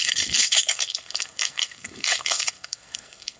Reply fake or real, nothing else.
fake